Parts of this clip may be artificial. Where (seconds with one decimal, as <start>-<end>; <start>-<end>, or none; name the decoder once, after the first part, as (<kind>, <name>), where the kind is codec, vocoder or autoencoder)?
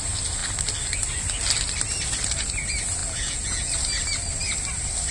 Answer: 3.0-3.7 (vocoder, Vocos)